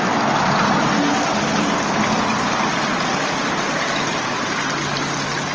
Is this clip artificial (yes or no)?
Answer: no